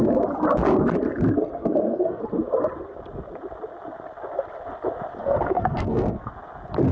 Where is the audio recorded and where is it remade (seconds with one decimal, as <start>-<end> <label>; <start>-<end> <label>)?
0.0-1.6 recorded; 1.6-2.2 remade; 2.2-5.2 recorded; 5.2-6.3 remade; 6.3-6.9 recorded